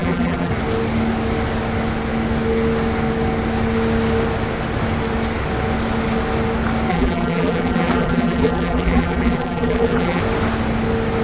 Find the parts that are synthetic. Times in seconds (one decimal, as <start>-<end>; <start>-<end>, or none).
0.0-0.5; 6.9-10.2